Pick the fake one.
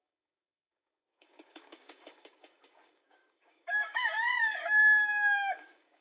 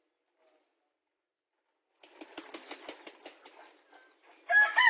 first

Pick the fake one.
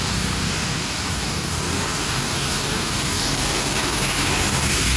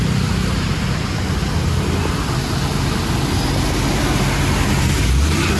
first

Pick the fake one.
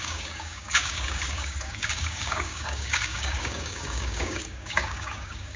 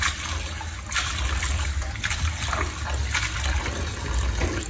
first